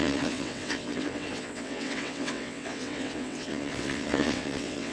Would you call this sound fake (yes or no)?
yes